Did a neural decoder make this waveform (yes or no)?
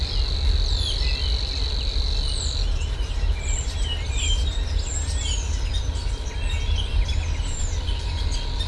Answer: no